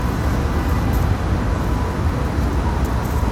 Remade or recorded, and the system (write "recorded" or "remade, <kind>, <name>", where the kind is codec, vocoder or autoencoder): recorded